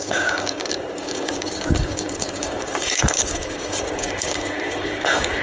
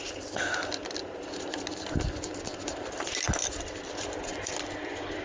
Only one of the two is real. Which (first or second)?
second